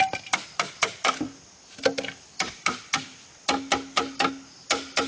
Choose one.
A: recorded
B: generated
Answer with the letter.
A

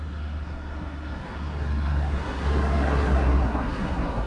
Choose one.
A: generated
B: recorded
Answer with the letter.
A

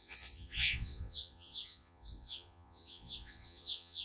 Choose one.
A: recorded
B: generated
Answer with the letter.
B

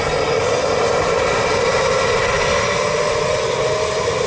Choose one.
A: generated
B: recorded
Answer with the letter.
B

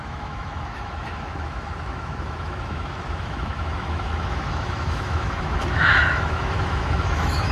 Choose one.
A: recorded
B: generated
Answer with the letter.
B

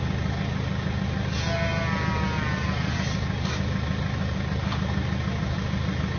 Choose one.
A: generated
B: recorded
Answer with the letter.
B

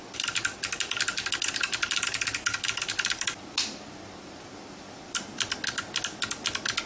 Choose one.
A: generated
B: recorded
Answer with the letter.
B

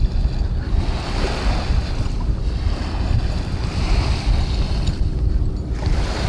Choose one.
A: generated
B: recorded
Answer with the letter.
B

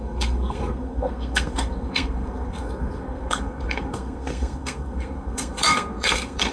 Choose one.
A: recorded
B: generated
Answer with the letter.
B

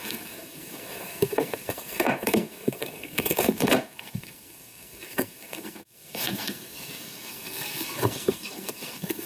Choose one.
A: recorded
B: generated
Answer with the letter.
B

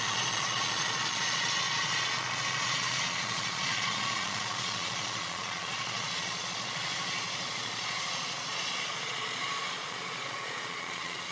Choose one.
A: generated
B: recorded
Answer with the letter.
A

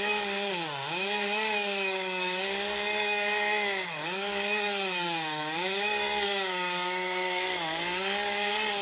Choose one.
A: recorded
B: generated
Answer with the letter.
B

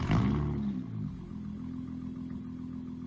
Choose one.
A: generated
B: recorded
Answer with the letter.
B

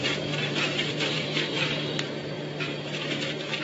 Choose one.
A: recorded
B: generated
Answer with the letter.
B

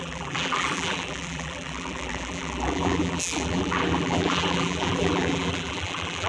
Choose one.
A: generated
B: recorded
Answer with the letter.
A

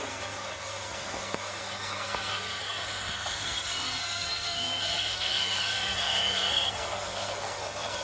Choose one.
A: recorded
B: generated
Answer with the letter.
B